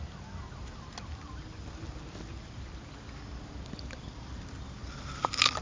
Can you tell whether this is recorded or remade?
recorded